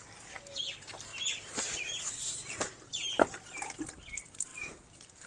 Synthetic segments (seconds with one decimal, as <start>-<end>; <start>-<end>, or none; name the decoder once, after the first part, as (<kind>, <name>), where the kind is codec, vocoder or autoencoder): none